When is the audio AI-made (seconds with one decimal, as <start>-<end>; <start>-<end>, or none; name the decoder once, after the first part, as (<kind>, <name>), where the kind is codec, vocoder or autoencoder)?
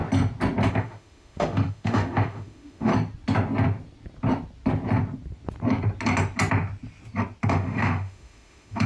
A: 0.7-2.9 (autoencoder, DAC-VAE); 7.5-8.9